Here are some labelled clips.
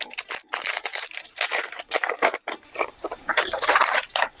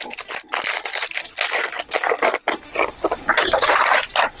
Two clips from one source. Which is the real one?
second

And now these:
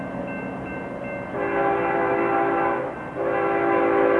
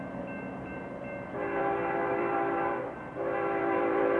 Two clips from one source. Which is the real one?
first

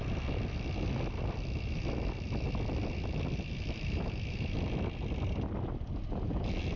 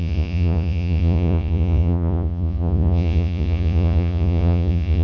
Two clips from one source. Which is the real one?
first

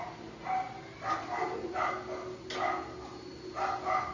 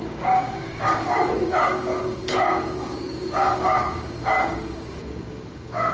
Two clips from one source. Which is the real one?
first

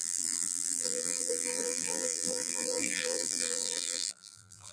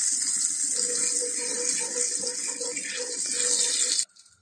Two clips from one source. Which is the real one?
second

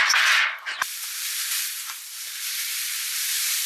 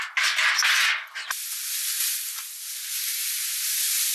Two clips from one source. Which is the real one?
second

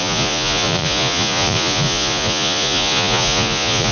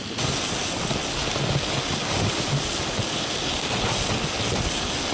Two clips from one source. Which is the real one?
second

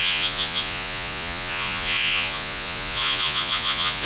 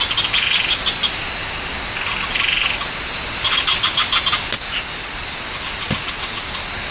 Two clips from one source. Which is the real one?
second